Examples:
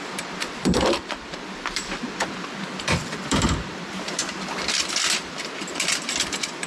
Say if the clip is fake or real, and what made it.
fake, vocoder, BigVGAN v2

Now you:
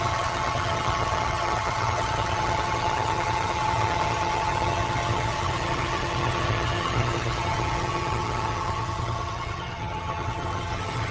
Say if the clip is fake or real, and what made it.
fake, vocoder, HiFi-GAN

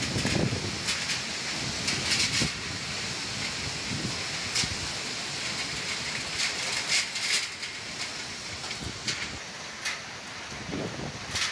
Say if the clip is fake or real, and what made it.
real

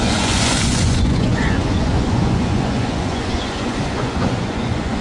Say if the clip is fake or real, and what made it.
fake, vocoder, Vocos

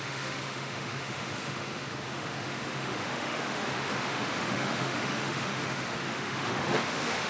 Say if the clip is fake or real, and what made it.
fake, autoencoder, DAC-VAE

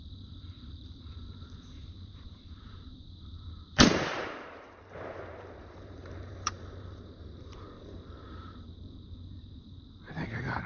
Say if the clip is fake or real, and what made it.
fake, vocoder, BigVGAN v2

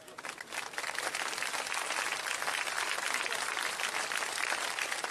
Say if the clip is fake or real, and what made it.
real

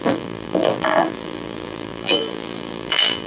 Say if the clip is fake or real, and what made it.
fake, vocoder, BigVGAN v2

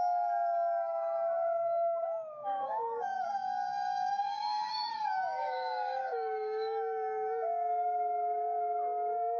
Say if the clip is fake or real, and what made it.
fake, codec, DAC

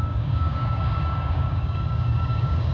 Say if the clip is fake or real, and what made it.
fake, codec, DAC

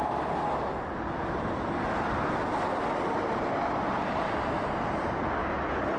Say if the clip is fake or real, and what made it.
real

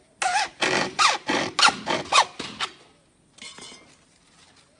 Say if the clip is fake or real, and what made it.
real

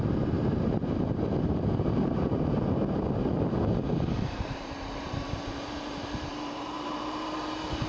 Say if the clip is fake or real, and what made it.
fake, vocoder, BigVGAN v2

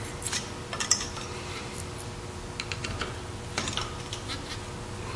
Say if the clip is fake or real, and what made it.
real